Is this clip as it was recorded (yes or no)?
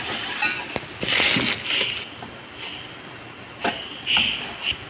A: yes